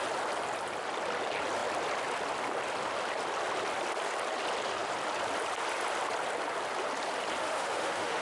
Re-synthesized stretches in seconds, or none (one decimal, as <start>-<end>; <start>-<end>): 7.4-8.2